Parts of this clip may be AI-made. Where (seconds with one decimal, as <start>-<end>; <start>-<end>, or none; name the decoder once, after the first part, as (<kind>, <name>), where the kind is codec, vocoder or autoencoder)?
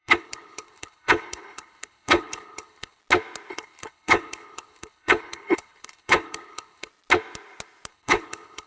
0.0-3.0 (codec, HILCodec); 3.5-6.9; 7.9-8.7